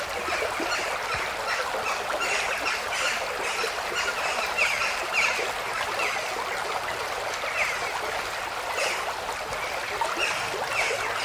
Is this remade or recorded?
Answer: recorded